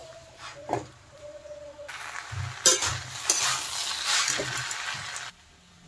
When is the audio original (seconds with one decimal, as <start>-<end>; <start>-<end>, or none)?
1.8-5.9